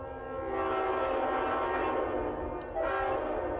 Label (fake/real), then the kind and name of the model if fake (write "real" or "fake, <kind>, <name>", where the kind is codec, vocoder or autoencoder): real